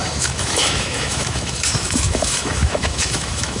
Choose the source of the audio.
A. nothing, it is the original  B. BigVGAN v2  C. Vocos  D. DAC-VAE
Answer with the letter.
D